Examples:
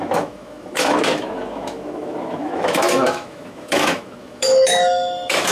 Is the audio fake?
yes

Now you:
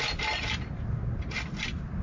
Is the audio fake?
no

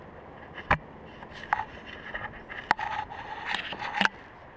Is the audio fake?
no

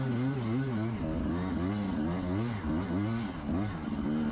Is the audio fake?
no